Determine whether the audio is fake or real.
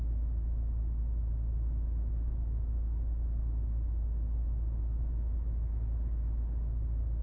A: real